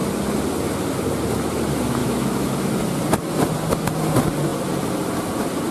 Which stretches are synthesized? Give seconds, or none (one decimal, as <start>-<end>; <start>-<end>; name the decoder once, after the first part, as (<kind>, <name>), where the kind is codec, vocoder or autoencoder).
2.0-2.7 (autoencoder, DAC-VAE)